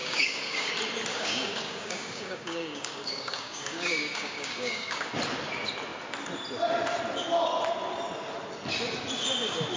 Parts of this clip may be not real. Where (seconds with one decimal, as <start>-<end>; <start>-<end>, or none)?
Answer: 0.0-0.7; 1.1-5.1